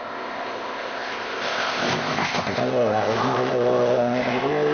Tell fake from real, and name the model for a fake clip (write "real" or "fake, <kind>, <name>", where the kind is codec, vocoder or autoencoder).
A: fake, codec, ZipCodec